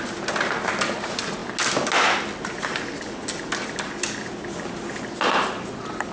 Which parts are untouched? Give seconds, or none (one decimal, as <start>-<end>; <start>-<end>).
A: 0.0-6.1